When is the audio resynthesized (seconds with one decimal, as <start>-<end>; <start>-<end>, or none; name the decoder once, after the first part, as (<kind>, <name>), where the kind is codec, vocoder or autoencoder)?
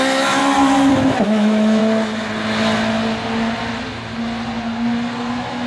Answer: 0.0-0.4 (autoencoder, DAC-VAE); 0.9-1.8; 5.2-5.7